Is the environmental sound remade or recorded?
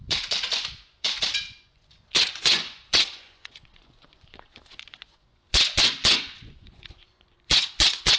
remade